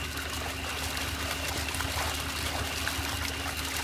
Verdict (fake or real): real